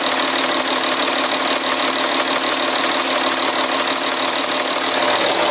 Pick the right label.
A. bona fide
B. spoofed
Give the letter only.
A